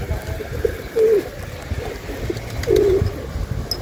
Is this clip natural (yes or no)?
yes